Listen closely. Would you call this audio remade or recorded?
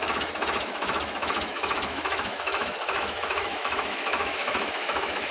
remade